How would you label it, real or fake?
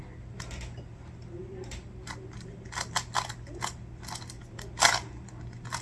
real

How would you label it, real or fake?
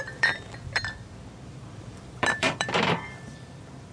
fake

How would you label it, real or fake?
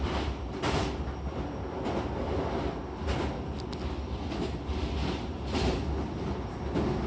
real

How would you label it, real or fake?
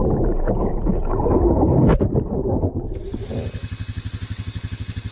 real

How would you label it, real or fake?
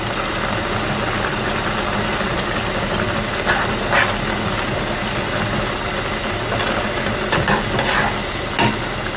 real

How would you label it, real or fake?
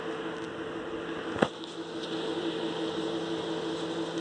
real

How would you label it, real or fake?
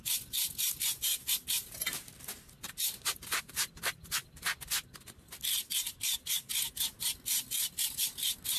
real